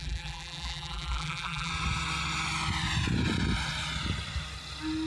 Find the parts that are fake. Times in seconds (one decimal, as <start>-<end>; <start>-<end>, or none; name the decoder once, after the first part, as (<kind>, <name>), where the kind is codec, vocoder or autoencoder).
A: 0.0-1.7 (vocoder, BigVGAN v2)